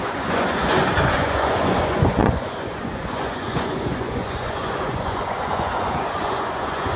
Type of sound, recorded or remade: remade